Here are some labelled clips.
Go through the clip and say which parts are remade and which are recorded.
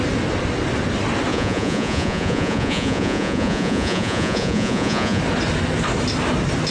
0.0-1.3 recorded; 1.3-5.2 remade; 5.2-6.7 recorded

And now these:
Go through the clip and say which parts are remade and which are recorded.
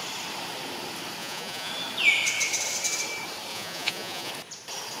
0.0-1.2 recorded; 1.2-1.7 remade; 1.7-3.5 recorded; 3.5-4.3 remade; 4.3-5.0 recorded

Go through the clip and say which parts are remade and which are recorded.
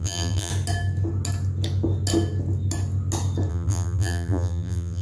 0.0-0.5 remade; 0.5-3.5 recorded; 3.5-5.0 remade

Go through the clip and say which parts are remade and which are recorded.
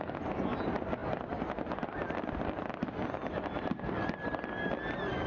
0.0-5.3 recorded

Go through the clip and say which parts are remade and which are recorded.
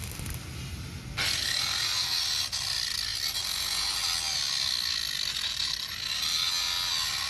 0.0-7.3 recorded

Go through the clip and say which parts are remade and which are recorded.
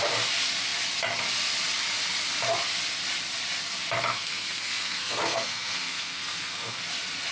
0.0-4.1 recorded; 4.1-6.8 remade; 6.8-7.3 recorded